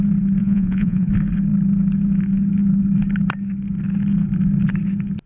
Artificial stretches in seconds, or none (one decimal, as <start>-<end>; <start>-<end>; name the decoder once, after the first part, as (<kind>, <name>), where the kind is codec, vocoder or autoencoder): 0.4-1.1 (vocoder, Vocos)